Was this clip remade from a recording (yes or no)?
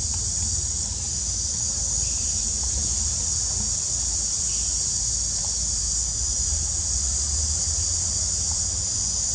no